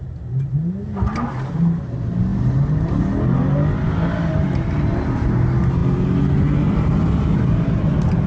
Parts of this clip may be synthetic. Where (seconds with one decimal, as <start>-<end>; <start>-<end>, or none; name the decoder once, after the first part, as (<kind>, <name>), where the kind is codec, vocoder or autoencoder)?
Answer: none